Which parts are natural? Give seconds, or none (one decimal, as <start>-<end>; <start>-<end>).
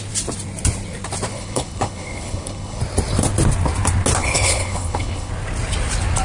0.0-1.3; 2.8-4.2; 5.3-6.2